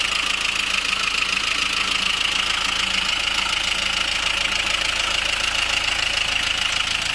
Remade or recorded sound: recorded